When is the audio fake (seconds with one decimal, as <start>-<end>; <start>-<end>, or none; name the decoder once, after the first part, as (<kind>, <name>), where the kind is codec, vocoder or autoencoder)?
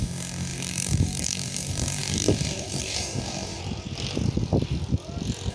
0.0-3.6 (codec, DAC)